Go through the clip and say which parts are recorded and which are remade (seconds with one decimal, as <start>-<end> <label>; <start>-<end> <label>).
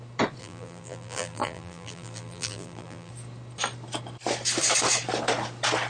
0.0-0.4 recorded; 0.4-3.1 remade; 3.1-5.9 recorded